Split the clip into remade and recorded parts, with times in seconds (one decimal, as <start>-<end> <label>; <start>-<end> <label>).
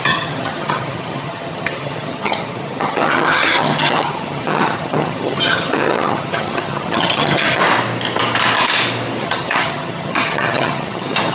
0.0-7.6 remade; 7.6-9.2 recorded; 9.2-11.3 remade